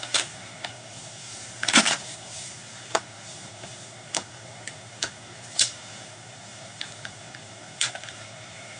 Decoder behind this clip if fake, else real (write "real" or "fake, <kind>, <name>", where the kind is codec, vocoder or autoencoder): fake, codec, SNAC